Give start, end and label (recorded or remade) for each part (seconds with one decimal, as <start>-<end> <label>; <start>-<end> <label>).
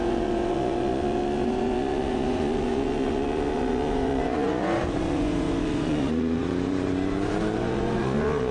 0.0-8.5 remade